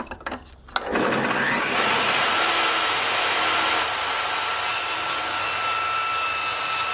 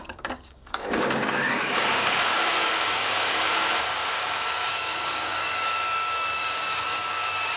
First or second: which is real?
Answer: first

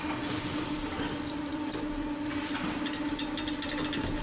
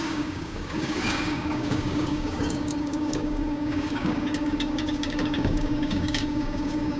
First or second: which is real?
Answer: first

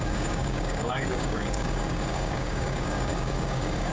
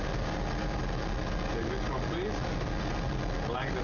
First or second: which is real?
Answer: second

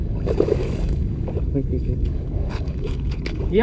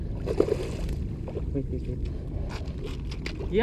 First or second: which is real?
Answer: second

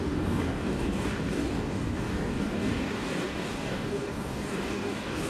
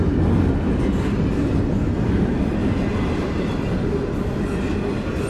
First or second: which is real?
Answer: second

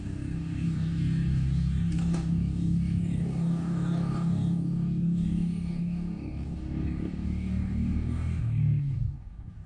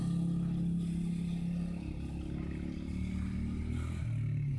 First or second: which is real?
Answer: second